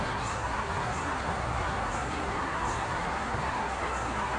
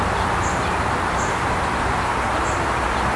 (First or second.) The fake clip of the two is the first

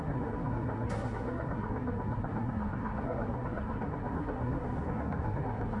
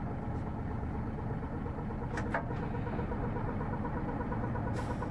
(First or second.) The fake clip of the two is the first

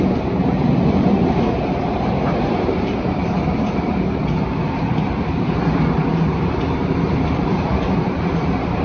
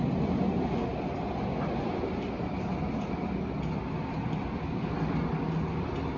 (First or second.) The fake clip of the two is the first